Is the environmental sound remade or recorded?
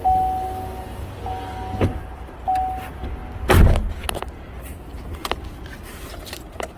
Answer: recorded